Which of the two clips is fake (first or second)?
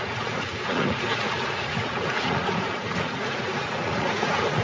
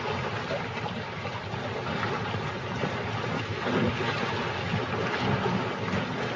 first